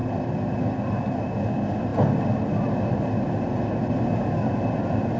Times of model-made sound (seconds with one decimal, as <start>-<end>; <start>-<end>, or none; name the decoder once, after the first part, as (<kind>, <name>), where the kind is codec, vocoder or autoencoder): none

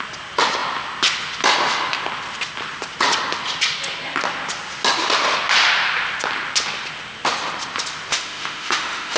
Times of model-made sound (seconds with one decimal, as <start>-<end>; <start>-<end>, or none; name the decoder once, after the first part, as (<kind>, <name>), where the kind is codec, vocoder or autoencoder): 8.1-9.2 (autoencoder, DAC-VAE)